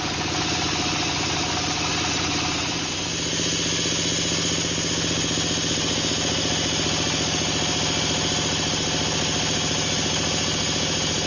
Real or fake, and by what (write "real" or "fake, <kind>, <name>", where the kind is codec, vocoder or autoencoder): real